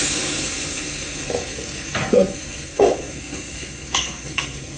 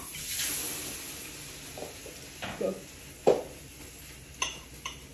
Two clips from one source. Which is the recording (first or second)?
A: second